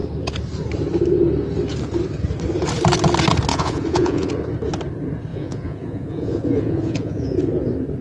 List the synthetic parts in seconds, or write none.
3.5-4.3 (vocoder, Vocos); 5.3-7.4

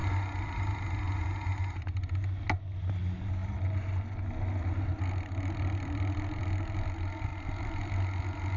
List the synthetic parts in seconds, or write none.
none

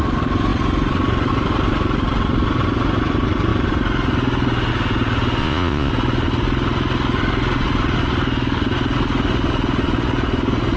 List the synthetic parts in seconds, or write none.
5.4-5.9 (vocoder, Vocos)